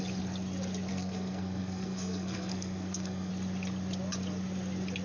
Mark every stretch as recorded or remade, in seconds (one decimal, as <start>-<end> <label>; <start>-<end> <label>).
0.0-0.9 recorded; 0.9-3.3 remade; 3.3-5.0 recorded